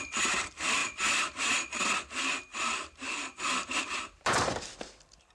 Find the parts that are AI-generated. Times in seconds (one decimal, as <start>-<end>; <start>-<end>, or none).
0.8-1.4; 2.5-5.3